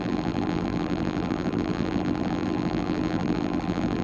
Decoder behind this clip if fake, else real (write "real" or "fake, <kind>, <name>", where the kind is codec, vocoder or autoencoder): fake, vocoder, BigVGAN v2